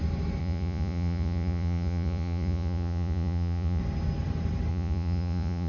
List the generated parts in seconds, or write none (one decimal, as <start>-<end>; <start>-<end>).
0.4-3.8; 4.7-5.7